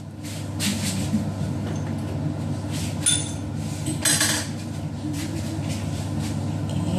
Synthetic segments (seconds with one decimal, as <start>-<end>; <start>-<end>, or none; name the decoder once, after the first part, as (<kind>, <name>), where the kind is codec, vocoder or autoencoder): none